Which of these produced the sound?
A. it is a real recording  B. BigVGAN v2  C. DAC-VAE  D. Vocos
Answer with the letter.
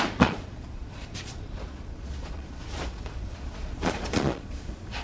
D